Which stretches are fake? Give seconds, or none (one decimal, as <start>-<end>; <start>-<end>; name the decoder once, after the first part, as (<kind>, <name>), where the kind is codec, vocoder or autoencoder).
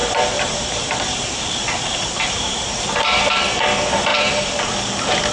0.0-3.2 (vocoder, BigVGAN v2); 4.1-4.7